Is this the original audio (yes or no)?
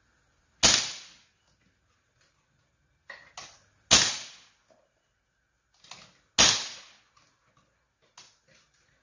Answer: yes